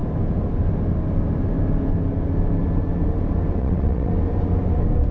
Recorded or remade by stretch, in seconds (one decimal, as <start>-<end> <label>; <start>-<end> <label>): 0.0-3.6 recorded; 3.6-4.1 remade; 4.1-5.1 recorded